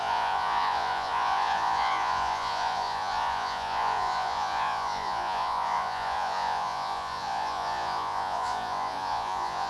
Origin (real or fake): fake